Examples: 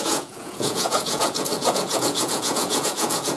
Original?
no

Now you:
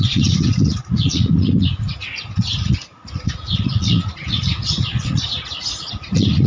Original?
no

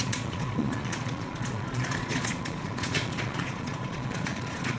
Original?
no